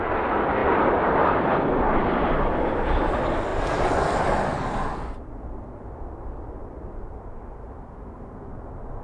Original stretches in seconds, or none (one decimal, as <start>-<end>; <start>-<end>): 0.0-9.0